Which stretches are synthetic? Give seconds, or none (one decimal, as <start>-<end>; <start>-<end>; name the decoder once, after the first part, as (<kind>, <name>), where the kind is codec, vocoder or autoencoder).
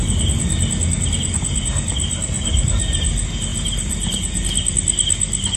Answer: none